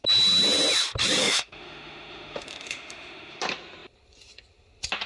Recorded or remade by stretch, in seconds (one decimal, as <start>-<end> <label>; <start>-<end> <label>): 0.0-1.2 recorded; 1.2-3.4 remade; 3.4-5.1 recorded